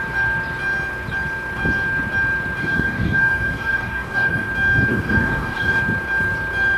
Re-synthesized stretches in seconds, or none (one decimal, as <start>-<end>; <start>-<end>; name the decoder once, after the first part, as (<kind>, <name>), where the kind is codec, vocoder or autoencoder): 2.6-4.5 (codec, DAC); 4.9-5.8